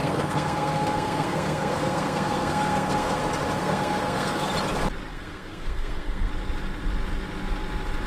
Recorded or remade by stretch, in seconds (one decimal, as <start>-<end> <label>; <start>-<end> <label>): 0.0-3.2 remade; 3.2-3.6 recorded; 3.6-4.5 remade; 4.5-5.1 recorded; 5.1-6.3 remade; 6.3-8.1 recorded